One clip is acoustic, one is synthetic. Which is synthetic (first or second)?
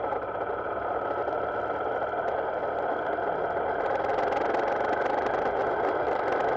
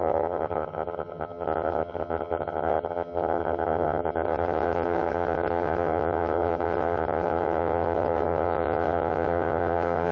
second